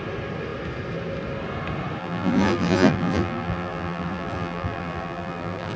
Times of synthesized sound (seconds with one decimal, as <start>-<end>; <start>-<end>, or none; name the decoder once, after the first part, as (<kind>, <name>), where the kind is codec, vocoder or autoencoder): 2.0-5.8 (vocoder, BigVGAN v2)